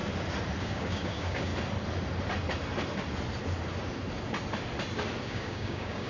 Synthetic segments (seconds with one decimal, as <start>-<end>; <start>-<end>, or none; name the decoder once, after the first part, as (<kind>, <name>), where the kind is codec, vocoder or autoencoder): 0.6-1.5 (codec, DAC); 5.2-6.1